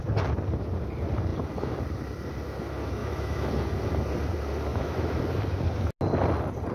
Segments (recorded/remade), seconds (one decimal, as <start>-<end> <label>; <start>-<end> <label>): 0.0-3.0 recorded; 3.0-3.5 remade; 3.5-4.7 recorded; 4.7-5.2 remade; 5.2-6.7 recorded